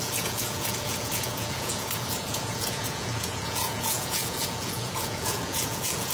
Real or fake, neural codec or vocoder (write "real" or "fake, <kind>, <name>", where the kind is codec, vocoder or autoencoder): fake, vocoder, Vocos